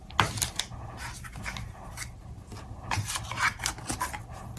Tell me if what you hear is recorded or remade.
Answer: recorded